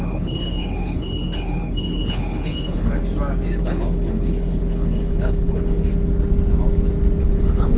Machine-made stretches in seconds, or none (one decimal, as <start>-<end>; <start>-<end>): 0.0-3.0; 3.6-5.9; 7.2-7.8